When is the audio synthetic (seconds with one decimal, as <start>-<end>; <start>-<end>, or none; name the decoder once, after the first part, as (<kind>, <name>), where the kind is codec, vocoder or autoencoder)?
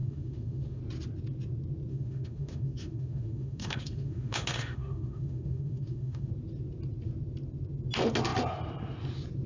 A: 0.0-0.8 (autoencoder, DAC-VAE); 1.9-6.3